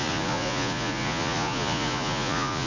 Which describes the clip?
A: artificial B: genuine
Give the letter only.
A